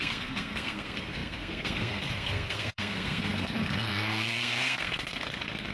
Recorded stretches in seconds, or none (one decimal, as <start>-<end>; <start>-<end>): none